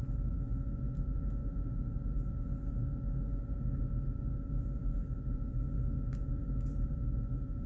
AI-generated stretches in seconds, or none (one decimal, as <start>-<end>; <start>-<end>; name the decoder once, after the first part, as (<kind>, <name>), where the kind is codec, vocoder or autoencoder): none